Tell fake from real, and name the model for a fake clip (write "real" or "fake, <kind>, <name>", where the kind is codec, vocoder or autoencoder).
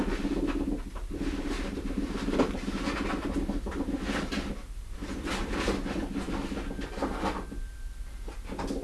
real